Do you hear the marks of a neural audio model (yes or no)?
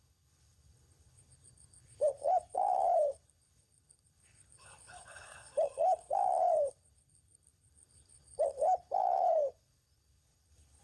yes